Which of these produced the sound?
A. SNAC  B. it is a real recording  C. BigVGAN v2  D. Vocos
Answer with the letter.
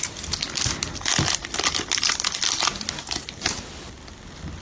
B